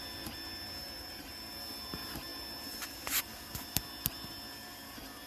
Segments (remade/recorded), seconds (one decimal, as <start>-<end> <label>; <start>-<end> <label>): 0.0-5.3 recorded